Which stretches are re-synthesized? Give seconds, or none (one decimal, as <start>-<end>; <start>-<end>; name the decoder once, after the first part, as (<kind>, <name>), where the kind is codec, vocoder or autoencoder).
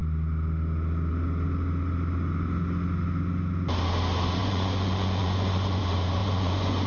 4.4-5.8 (vocoder, Vocos); 6.2-6.9